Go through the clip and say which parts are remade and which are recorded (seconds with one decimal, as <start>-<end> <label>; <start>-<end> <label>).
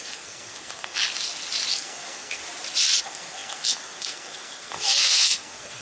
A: 0.0-1.0 remade; 1.0-1.7 recorded; 1.7-2.4 remade; 2.4-3.0 recorded; 3.0-5.8 remade